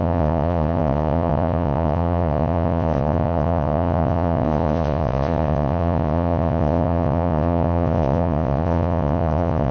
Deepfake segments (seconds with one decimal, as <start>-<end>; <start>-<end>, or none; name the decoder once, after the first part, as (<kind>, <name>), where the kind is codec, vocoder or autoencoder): 0.0-9.7 (vocoder, Vocos)